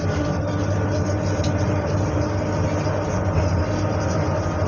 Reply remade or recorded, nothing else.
recorded